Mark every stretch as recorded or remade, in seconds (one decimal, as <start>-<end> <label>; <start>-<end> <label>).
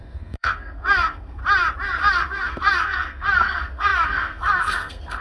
0.0-1.4 remade; 1.4-2.0 recorded; 2.0-5.2 remade